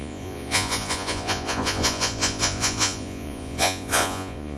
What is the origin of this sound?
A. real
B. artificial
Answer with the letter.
B